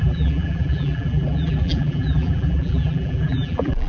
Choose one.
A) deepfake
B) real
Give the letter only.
A